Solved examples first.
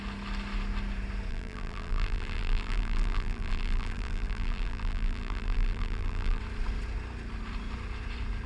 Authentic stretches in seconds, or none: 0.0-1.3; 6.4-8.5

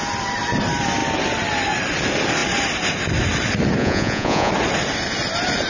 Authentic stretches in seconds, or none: 0.0-3.8; 4.5-5.7